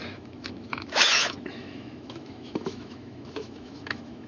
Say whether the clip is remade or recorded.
remade